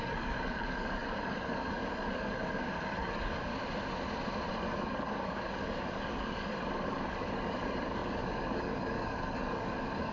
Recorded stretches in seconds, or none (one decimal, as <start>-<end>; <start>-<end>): 3.5-4.5